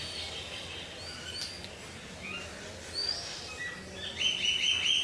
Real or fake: real